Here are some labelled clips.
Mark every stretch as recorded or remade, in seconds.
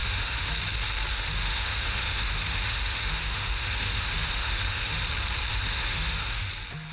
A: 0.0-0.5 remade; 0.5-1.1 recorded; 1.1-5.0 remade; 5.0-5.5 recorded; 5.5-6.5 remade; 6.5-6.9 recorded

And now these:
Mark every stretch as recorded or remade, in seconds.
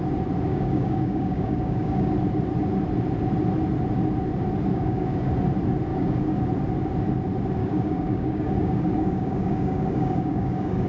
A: 0.0-0.5 recorded; 0.5-2.1 remade; 2.1-4.7 recorded; 4.7-5.3 remade; 5.3-5.9 recorded; 5.9-6.4 remade; 6.4-7.6 recorded; 7.6-10.9 remade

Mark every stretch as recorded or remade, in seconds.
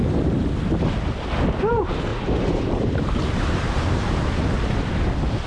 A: 0.0-2.1 recorded; 2.1-5.1 remade; 5.1-5.5 recorded